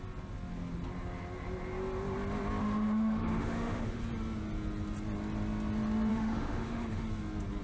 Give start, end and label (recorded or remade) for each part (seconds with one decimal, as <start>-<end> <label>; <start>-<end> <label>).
0.0-2.6 recorded; 2.6-4.0 remade; 4.0-6.1 recorded; 6.1-7.0 remade; 7.0-7.6 recorded